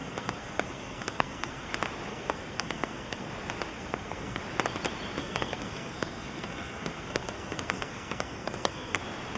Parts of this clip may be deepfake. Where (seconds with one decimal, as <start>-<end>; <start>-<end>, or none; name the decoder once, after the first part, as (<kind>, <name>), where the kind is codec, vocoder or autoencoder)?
0.0-1.7 (codec, SNAC); 2.1-3.3; 3.7-4.4; 5.2-9.0